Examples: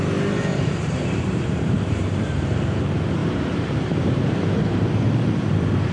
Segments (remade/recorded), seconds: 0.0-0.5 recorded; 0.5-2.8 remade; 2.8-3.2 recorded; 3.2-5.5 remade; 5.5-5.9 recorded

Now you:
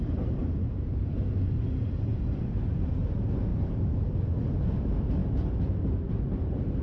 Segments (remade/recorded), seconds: 0.0-0.4 recorded; 0.4-2.9 remade; 2.9-3.5 recorded; 3.5-4.1 remade; 4.1-6.8 recorded

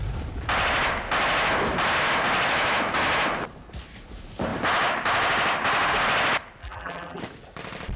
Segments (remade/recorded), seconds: 0.0-6.6 recorded; 6.6-7.2 remade; 7.2-8.0 recorded

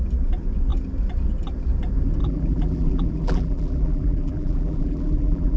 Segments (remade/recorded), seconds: 0.0-2.2 recorded; 2.2-5.6 remade

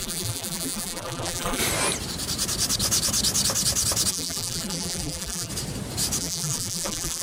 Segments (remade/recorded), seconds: 0.0-1.6 remade; 1.6-4.1 recorded; 4.1-5.5 remade; 5.5-6.2 recorded; 6.2-7.2 remade

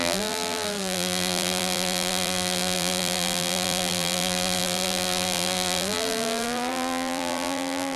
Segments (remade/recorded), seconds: 0.0-8.0 remade

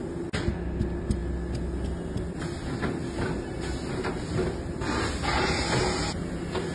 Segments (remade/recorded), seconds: 0.0-6.7 recorded

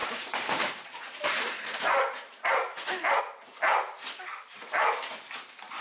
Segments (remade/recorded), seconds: 0.0-3.2 remade; 3.2-4.6 recorded; 4.6-5.1 remade; 5.1-5.8 recorded